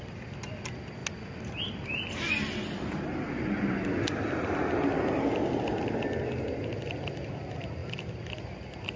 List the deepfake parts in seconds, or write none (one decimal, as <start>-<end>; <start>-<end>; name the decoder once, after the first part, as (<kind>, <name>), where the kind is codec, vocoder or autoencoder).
none